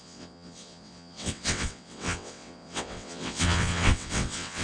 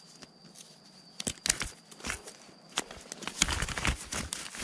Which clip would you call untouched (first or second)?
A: second